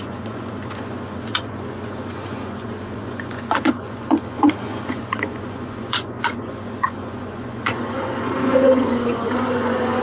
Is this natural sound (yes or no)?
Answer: no